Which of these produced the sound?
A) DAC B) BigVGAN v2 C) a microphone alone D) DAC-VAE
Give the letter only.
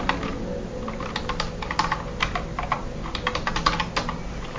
C